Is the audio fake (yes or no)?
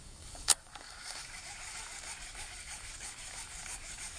yes